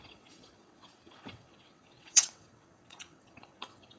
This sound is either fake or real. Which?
fake